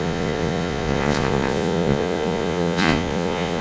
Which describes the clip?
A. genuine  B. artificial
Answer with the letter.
B